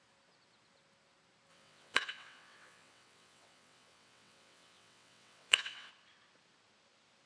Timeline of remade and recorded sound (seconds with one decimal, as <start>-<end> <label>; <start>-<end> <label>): 0.0-1.5 recorded; 1.5-5.9 remade; 5.9-7.3 recorded